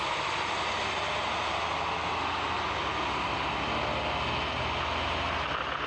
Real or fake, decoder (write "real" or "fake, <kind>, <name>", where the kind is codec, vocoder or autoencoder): real